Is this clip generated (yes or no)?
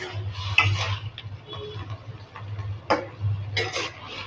no